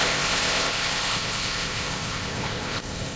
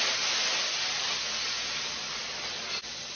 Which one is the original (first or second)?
second